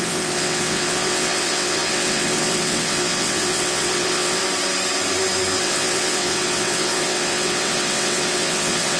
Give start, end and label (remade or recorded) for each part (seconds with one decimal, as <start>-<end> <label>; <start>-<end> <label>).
0.0-4.4 remade; 4.4-5.6 recorded; 5.6-9.0 remade